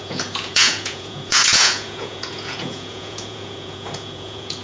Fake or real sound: fake